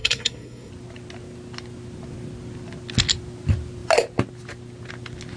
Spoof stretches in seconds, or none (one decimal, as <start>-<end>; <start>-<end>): 0.0-0.7